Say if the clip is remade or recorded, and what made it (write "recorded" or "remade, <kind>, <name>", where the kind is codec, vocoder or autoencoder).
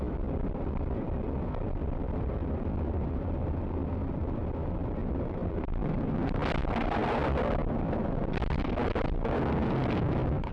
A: recorded